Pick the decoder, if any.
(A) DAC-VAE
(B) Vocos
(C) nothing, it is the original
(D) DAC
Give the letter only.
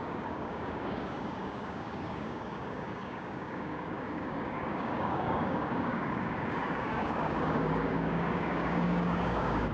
D